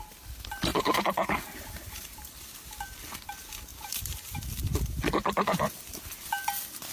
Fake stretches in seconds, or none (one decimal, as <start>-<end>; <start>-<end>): 0.7-2.2; 3.7-4.9